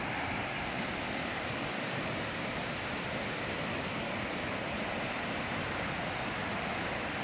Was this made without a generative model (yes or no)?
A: yes